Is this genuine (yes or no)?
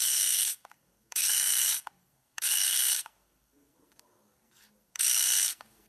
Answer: no